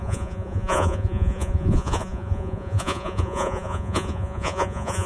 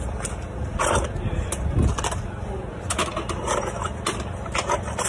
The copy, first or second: first